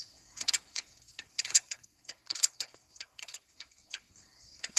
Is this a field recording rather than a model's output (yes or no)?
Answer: no